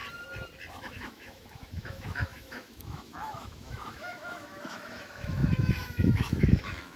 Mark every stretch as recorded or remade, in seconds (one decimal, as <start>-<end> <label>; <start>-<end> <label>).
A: 0.0-0.7 recorded; 0.7-7.0 remade